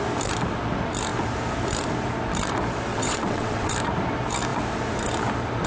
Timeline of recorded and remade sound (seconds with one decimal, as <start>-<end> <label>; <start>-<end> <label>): 0.0-2.9 recorded; 2.9-3.7 remade; 3.7-5.7 recorded